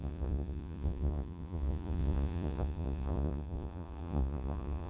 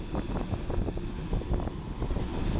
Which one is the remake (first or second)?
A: first